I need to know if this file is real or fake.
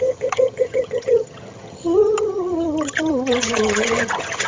fake